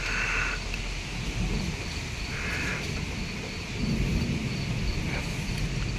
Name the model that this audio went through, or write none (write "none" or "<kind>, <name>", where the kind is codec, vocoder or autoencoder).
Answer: none